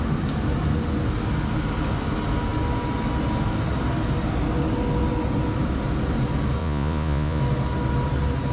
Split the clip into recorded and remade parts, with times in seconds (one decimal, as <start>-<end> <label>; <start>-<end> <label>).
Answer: 0.0-6.6 recorded; 6.6-7.4 remade; 7.4-8.5 recorded